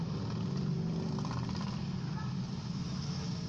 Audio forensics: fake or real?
real